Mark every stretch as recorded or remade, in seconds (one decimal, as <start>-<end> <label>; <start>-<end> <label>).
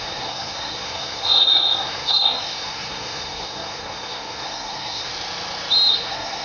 0.0-5.1 remade; 5.1-5.9 recorded; 5.9-6.4 remade